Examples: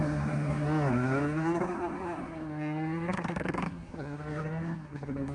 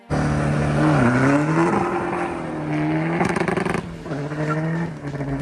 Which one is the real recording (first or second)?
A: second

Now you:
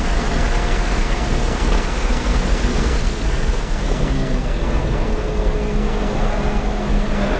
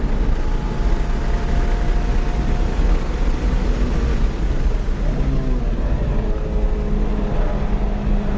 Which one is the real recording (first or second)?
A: second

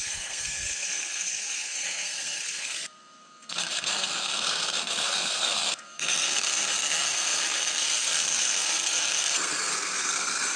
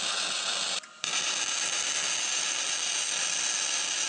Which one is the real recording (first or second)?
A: second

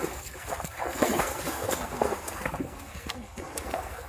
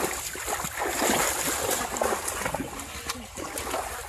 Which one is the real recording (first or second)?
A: second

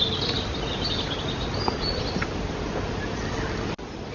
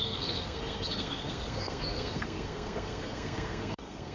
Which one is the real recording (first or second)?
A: first